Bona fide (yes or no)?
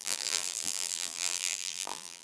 no